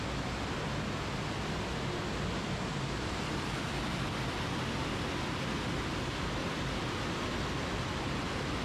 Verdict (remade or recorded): recorded